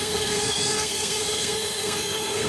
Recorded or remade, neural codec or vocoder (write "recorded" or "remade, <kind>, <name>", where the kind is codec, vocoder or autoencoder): remade, codec, SNAC